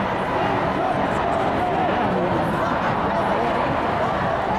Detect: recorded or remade recorded